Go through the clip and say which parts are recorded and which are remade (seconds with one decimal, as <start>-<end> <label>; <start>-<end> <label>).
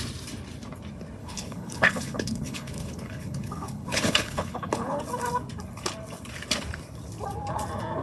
0.0-1.2 recorded; 1.2-5.0 remade; 5.0-8.0 recorded